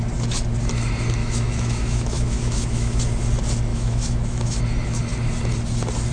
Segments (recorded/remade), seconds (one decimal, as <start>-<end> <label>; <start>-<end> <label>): 0.0-1.2 recorded; 1.2-3.0 remade; 3.0-3.7 recorded; 3.7-4.6 remade; 4.6-6.1 recorded

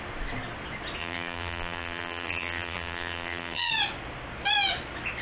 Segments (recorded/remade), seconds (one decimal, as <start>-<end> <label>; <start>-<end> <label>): 0.0-1.0 recorded; 1.0-3.7 remade; 3.7-5.2 recorded

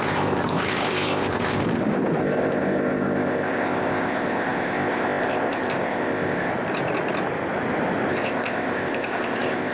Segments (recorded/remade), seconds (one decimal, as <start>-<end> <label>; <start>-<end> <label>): 0.0-1.6 remade; 1.6-2.2 recorded; 2.2-6.5 remade; 6.5-8.1 recorded; 8.1-9.7 remade

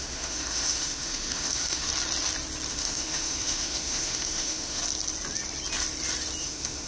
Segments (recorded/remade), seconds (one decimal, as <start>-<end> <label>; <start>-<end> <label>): 0.0-1.9 remade; 1.9-2.7 recorded; 2.7-4.8 remade; 4.8-6.4 recorded; 6.4-6.9 remade

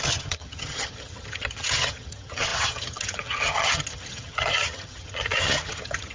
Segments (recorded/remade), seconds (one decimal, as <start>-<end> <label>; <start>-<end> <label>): 0.0-6.1 remade